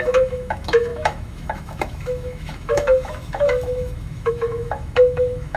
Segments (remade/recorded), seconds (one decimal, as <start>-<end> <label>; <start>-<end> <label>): 0.0-5.6 remade